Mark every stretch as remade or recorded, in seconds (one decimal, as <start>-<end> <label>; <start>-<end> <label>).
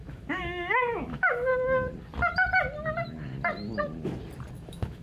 0.0-1.5 remade; 1.5-4.5 recorded; 4.5-5.0 remade